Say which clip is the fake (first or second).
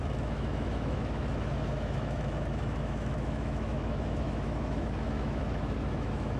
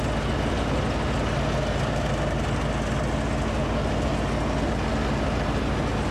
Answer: first